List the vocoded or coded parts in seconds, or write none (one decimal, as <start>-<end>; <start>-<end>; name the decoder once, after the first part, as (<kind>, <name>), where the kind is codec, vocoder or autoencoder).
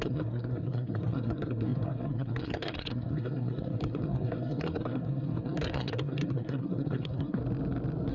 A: 0.0-7.4 (codec, SNAC)